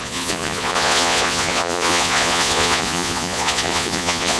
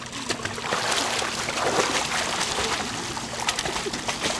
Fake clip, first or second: first